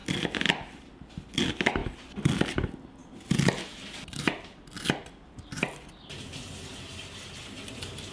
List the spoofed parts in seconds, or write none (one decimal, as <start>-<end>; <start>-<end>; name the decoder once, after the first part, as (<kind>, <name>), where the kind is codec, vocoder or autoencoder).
0.0-1.1 (vocoder, BigVGAN v2); 3.0-5.9